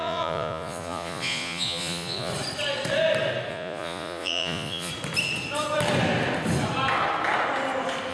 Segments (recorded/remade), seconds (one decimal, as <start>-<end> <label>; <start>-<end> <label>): 0.0-2.3 remade; 2.3-3.5 recorded; 3.5-4.9 remade; 4.9-8.1 recorded